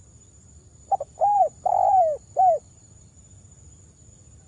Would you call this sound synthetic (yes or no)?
yes